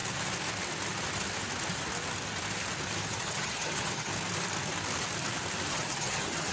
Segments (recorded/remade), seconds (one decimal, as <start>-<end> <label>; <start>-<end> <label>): 0.0-3.2 recorded; 3.2-4.1 remade; 4.1-5.7 recorded; 5.7-6.5 remade